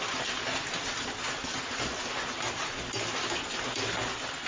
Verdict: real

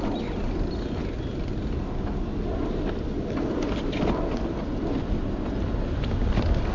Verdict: real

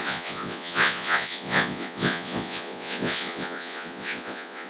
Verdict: fake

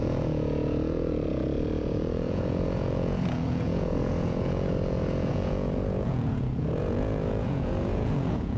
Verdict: fake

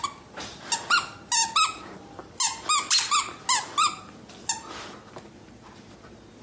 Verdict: real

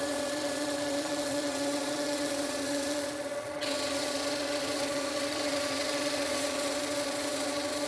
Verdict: fake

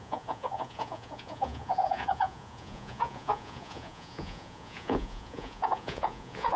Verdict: fake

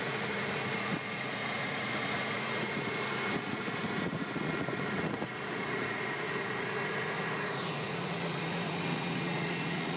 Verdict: fake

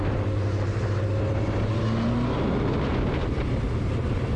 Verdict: real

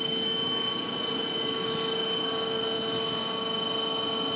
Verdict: real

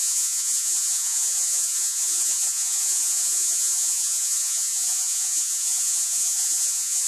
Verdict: fake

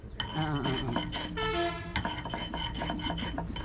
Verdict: real